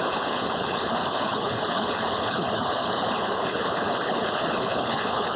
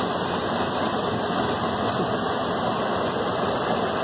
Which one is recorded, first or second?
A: second